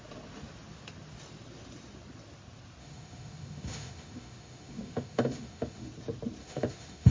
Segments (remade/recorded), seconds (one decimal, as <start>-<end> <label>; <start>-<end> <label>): 0.0-2.8 recorded; 2.8-5.9 remade; 5.9-6.4 recorded; 6.4-7.1 remade